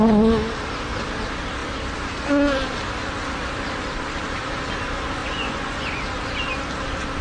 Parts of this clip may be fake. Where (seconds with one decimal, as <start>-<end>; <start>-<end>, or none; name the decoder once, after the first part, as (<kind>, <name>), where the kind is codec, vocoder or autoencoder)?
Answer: 5.2-6.0 (vocoder, Vocos)